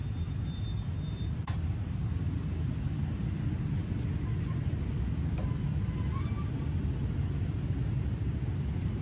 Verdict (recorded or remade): recorded